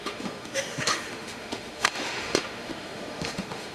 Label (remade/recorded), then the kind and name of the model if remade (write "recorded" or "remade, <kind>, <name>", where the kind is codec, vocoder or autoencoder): remade, autoencoder, DAC-VAE